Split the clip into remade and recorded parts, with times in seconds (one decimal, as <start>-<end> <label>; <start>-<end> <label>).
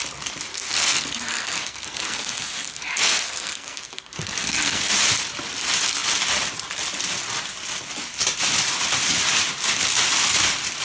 0.0-0.5 recorded; 0.5-4.9 remade; 4.9-10.8 recorded